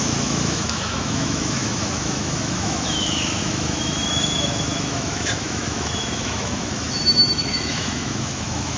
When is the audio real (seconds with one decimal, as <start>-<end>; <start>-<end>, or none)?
none